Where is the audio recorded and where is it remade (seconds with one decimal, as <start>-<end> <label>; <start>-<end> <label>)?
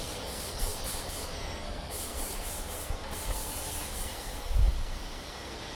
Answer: 0.0-5.7 remade